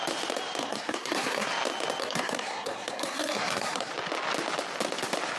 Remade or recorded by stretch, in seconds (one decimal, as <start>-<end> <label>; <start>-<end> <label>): 0.0-0.6 recorded; 0.6-1.5 remade; 1.5-2.0 recorded; 2.0-3.9 remade; 3.9-5.4 recorded